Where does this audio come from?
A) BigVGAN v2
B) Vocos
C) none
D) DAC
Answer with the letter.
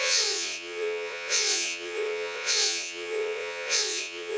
B